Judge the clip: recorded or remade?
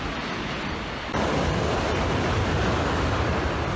recorded